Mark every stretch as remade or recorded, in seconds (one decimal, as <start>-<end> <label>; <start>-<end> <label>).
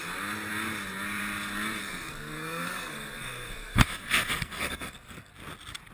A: 0.0-1.8 recorded; 1.8-5.3 remade; 5.3-5.9 recorded